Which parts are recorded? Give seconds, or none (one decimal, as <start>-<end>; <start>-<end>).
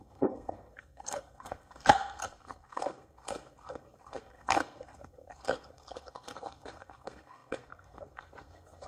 none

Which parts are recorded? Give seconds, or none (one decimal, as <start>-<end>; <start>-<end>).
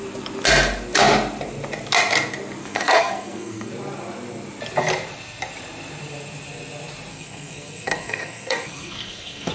0.0-2.6; 3.7-7.1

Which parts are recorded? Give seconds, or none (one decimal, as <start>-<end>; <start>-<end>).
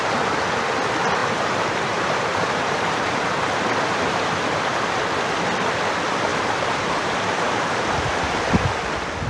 0.0-1.2; 4.6-6.3; 8.3-9.3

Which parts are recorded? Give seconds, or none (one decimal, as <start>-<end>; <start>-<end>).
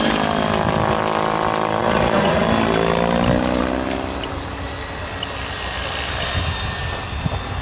0.0-1.8; 2.4-7.6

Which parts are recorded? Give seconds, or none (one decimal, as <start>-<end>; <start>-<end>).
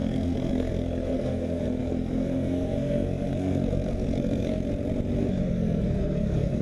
4.6-5.2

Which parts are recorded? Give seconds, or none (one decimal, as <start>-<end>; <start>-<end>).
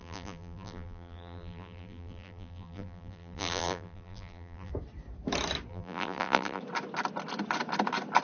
4.7-5.7; 6.6-8.2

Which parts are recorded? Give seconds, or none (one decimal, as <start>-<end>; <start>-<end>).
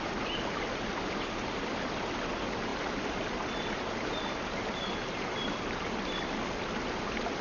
0.0-7.4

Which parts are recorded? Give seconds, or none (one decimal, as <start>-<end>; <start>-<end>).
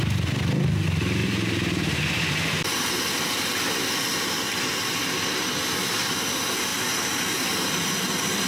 0.0-1.2; 3.0-6.7; 7.7-8.5